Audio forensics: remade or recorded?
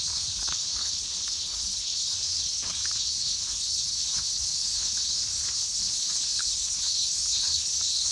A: remade